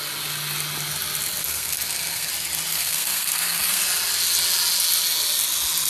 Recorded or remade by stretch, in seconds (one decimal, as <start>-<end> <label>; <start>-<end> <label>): 0.0-1.4 recorded; 1.4-2.3 remade; 2.3-2.7 recorded; 2.7-3.8 remade; 3.8-5.9 recorded